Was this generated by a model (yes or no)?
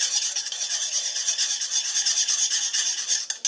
no